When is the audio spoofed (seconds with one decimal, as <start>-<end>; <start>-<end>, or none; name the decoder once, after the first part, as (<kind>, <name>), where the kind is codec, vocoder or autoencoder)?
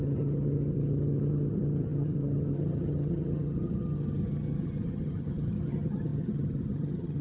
0.0-7.2 (vocoder, HiFi-GAN)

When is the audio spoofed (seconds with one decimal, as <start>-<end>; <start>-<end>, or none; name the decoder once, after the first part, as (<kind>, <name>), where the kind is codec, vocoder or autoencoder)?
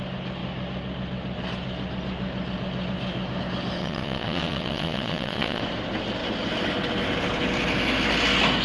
3.8-5.6 (vocoder, Vocos)